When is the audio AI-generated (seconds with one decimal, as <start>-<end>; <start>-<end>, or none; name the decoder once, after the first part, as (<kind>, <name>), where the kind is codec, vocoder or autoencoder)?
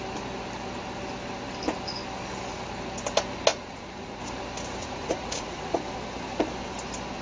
3.5-4.2 (vocoder, Vocos); 4.8-5.8